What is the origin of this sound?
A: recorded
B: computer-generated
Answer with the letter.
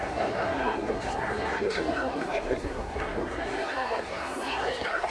B